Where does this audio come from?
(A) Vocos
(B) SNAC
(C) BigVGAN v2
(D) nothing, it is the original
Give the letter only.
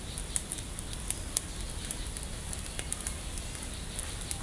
D